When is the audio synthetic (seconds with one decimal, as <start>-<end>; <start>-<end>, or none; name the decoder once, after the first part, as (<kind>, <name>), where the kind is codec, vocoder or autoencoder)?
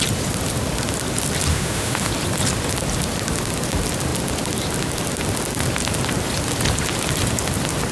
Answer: 1.5-2.1 (autoencoder, DAC-VAE)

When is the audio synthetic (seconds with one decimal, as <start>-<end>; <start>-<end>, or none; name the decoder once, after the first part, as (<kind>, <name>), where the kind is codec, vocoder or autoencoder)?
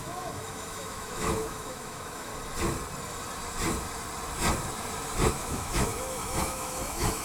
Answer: 0.0-2.3 (autoencoder, DAC-VAE); 5.3-7.2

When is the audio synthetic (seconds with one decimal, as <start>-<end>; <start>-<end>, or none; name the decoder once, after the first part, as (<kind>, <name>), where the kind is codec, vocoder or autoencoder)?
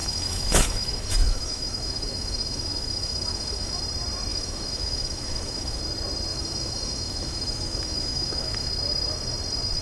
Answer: 0.0-3.8 (autoencoder, DAC-VAE); 4.3-5.8; 6.3-8.7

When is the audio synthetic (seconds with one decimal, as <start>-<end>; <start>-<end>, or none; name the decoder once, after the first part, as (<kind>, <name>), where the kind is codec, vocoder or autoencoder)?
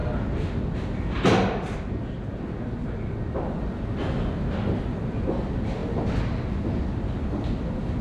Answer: none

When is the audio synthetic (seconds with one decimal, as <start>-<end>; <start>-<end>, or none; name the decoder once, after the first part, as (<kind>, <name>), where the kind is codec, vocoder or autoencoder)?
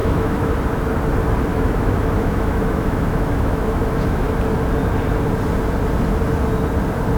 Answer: 0.0-0.5 (autoencoder, DAC-VAE); 1.5-4.3